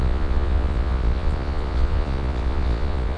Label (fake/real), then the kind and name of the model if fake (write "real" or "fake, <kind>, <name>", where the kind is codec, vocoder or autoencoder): fake, vocoder, Vocos